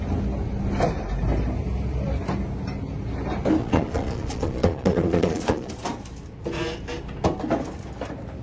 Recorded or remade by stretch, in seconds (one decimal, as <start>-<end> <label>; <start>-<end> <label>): 0.0-3.6 recorded; 3.6-5.7 remade; 5.7-8.4 recorded